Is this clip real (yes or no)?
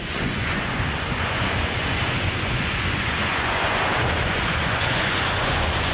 no